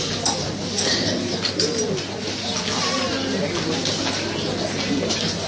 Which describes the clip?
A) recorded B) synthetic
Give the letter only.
A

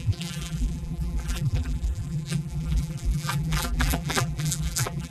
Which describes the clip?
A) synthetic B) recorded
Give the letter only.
A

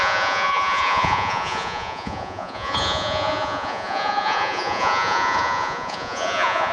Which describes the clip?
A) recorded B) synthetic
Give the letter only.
B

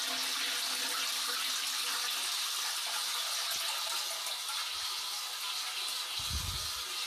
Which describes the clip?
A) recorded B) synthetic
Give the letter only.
A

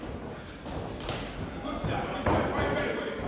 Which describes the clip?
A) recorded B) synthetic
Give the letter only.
A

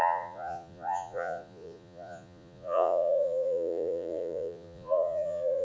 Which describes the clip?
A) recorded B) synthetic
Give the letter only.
B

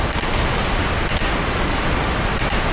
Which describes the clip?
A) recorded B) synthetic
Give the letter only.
A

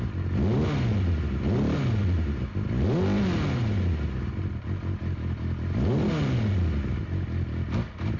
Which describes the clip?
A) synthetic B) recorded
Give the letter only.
B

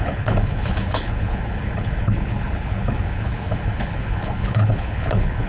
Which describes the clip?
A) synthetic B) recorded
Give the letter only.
A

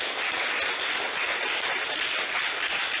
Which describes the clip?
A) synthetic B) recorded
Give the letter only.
B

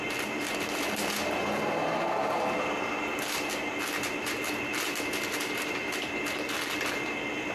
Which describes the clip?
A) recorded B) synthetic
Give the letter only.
A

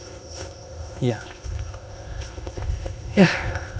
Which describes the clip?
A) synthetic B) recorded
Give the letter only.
A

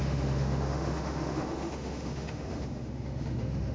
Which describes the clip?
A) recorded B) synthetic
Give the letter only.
B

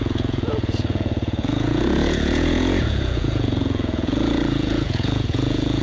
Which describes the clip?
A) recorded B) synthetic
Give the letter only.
B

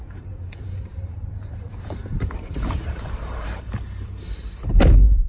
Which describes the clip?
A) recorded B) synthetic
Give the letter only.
B